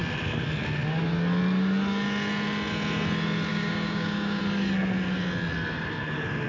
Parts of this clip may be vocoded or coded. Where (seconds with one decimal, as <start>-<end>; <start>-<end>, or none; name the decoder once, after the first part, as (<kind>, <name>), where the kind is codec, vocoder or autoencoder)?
3.5-4.4 (codec, DAC)